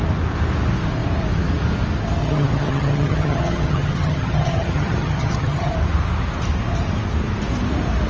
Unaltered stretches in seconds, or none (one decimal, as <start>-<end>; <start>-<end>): 0.0-2.2; 5.7-8.1